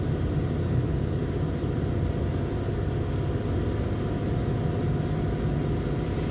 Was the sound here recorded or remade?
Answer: recorded